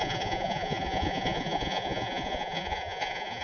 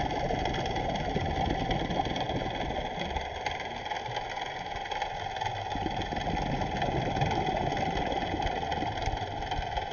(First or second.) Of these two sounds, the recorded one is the second